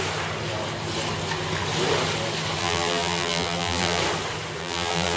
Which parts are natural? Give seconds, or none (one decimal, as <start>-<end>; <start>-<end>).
0.0-2.6; 4.0-4.6